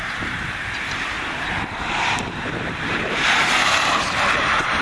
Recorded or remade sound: remade